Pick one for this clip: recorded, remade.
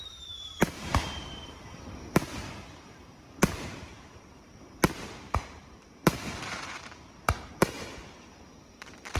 remade